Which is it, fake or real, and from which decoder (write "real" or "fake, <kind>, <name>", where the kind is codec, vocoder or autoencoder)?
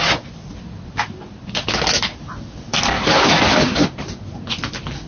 real